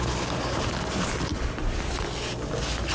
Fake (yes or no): no